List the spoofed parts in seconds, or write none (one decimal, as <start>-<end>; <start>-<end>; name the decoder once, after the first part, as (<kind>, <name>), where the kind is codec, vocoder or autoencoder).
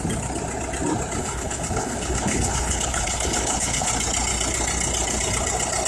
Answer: 1.2-3.9 (codec, HILCodec)